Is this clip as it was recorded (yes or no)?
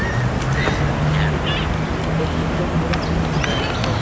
yes